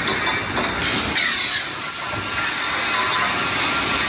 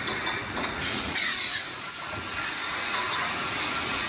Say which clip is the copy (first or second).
second